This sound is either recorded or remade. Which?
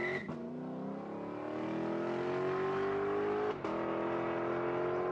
recorded